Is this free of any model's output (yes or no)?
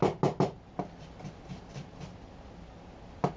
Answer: yes